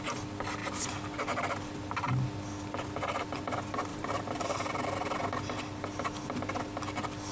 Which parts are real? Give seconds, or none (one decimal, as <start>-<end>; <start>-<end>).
0.0-3.9; 4.6-7.3